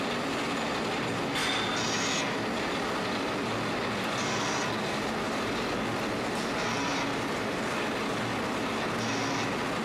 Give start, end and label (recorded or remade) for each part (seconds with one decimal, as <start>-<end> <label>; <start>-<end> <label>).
0.0-9.8 recorded